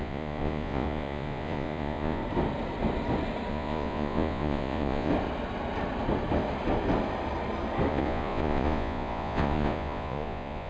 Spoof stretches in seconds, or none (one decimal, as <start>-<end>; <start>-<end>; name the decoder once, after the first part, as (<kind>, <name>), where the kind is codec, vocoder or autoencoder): 0.0-2.2 (vocoder, Vocos); 3.5-5.1; 7.9-10.7